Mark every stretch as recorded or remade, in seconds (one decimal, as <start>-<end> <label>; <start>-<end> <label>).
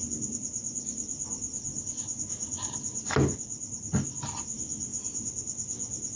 0.0-6.2 recorded